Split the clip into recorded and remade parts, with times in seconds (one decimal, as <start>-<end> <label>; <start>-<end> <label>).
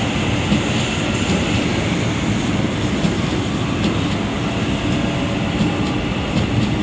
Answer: 0.0-6.8 recorded